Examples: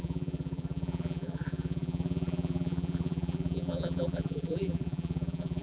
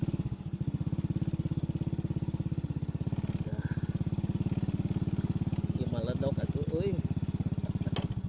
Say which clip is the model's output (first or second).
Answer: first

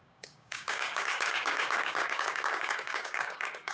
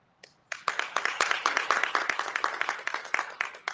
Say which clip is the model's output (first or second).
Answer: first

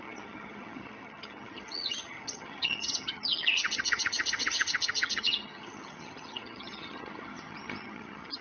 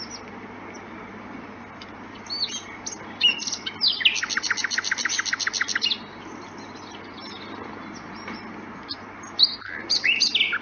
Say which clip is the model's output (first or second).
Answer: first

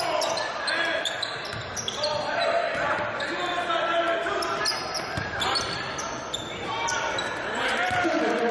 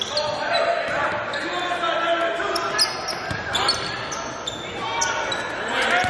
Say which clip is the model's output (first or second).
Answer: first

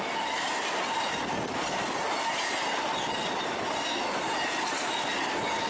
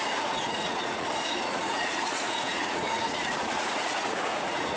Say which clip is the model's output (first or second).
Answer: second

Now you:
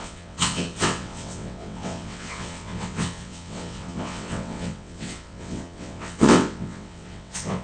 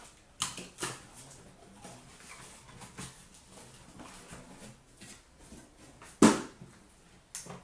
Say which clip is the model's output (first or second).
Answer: first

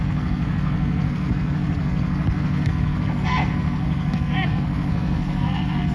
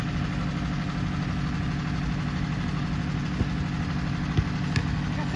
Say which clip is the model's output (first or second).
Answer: first